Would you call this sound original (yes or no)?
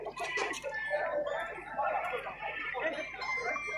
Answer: no